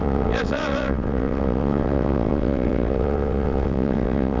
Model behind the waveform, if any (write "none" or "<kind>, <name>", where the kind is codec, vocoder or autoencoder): vocoder, WaveNeXt